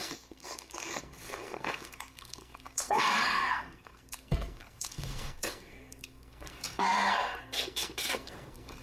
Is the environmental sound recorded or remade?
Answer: remade